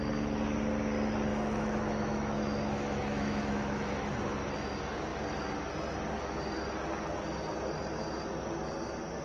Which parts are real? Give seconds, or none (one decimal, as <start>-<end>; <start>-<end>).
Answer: 0.0-1.3; 4.2-9.2